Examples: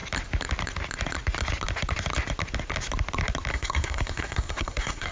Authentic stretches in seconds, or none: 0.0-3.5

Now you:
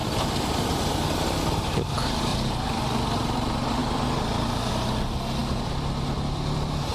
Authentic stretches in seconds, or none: 0.9-2.3; 2.8-3.8; 4.7-5.4

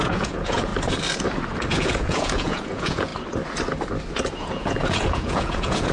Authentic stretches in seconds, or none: 0.7-1.7; 3.1-4.4

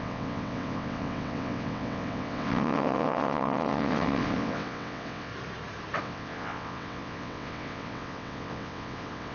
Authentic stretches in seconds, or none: 5.3-6.0

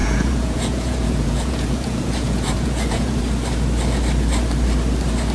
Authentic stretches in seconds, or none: 3.2-5.3

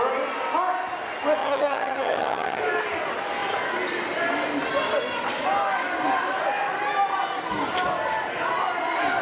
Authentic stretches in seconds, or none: 0.0-1.4; 2.6-9.2

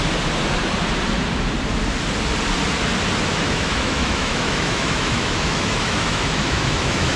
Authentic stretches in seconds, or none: 0.0-3.3